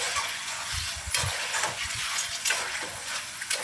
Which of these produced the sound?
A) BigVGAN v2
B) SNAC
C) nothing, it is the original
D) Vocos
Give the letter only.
D